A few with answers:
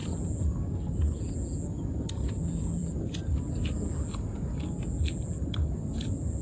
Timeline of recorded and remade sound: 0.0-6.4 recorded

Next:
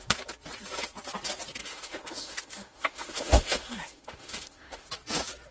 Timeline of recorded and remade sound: 0.0-1.6 recorded; 1.6-4.9 remade; 4.9-5.5 recorded

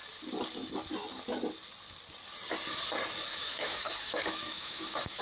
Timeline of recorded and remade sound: 0.0-3.3 recorded; 3.3-5.2 remade

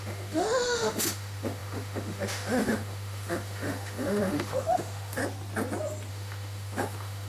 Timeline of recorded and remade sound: 0.0-5.2 remade; 5.2-6.1 recorded; 6.1-7.3 remade